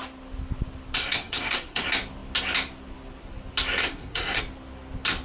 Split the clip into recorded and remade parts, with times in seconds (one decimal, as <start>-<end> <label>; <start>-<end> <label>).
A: 0.0-1.0 recorded; 1.0-1.8 remade; 1.8-3.8 recorded; 3.8-4.4 remade; 4.4-5.2 recorded

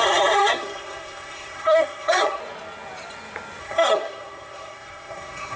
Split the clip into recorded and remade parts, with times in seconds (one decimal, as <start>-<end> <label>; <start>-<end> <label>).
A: 0.0-2.4 remade; 2.4-3.6 recorded; 3.6-5.6 remade

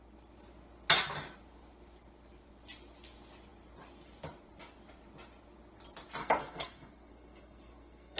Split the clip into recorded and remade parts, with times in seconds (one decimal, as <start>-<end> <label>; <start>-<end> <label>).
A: 0.0-6.2 recorded; 6.2-8.2 remade

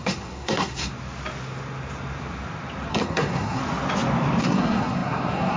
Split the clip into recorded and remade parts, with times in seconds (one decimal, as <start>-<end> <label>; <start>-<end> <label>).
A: 0.0-0.9 remade; 0.9-2.9 recorded; 2.9-3.6 remade; 3.6-4.4 recorded; 4.4-5.6 remade

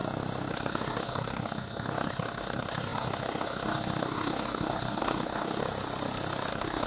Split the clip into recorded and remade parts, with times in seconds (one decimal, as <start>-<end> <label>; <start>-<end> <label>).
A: 0.0-0.5 recorded; 0.5-5.6 remade; 5.6-6.5 recorded; 6.5-6.9 remade

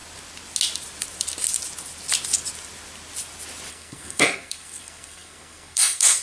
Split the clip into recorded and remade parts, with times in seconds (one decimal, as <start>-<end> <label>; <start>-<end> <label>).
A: 0.0-3.7 recorded; 3.7-6.2 remade